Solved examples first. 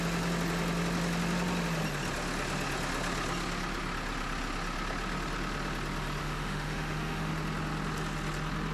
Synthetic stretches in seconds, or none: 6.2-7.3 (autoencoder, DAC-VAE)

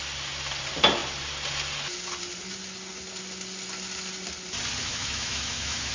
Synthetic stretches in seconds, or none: 4.8-5.9 (autoencoder, DAC-VAE)

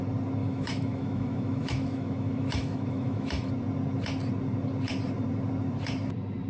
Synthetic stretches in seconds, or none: 0.4-3.5 (autoencoder, DAC-VAE)